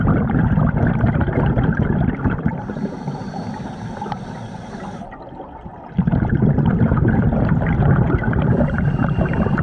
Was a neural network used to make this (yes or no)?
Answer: no